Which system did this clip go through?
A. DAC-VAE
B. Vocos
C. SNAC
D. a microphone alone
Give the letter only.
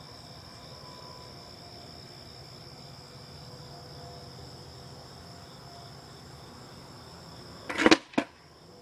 D